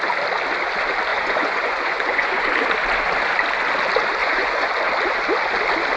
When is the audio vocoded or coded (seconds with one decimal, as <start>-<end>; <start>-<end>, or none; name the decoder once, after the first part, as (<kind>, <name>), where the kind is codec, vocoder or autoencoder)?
1.1-2.4 (vocoder, Vocos); 4.2-4.7